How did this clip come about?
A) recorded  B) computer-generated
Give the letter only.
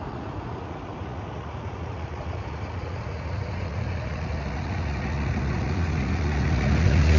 B